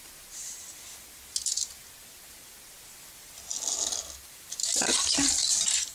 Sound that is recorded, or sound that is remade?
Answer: recorded